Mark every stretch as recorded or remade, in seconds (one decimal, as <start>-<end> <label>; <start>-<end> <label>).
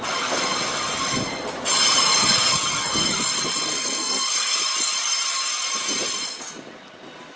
0.0-3.7 recorded; 3.7-4.6 remade; 4.6-7.4 recorded